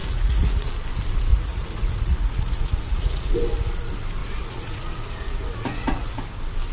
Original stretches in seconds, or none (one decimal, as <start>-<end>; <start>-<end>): 0.7-1.3; 3.3-4.2; 6.2-6.7